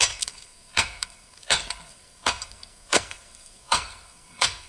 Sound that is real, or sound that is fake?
fake